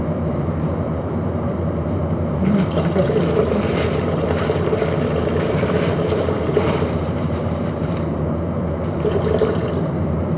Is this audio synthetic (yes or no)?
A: yes